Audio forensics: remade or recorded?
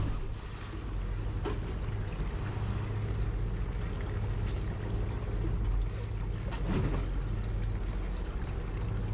recorded